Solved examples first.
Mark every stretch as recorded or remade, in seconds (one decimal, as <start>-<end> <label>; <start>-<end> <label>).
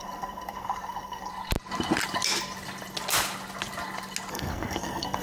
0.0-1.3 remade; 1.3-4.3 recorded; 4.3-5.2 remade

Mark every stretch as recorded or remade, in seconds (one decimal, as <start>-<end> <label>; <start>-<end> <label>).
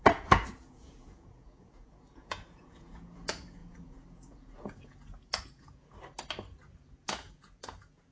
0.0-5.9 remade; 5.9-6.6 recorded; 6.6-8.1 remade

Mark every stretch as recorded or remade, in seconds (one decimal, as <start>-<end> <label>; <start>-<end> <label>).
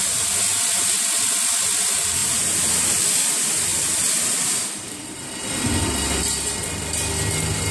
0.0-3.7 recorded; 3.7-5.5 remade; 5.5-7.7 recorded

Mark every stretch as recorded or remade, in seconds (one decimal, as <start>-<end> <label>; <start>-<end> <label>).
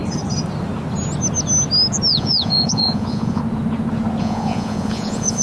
0.0-2.1 recorded; 2.1-3.4 remade; 3.4-4.2 recorded; 4.2-5.4 remade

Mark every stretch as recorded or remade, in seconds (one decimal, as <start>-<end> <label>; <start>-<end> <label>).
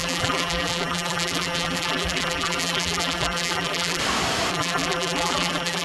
0.0-4.0 remade; 4.0-4.5 recorded; 4.5-5.8 remade